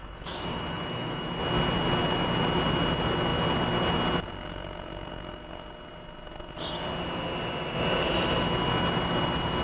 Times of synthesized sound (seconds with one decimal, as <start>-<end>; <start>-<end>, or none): 0.0-1.2